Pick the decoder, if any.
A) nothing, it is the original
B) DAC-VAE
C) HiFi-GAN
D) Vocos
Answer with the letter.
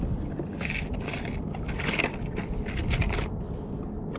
A